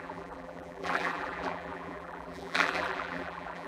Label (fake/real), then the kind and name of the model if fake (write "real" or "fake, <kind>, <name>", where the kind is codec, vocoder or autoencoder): fake, vocoder, BigVGAN v2